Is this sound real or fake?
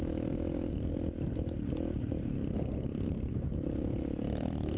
real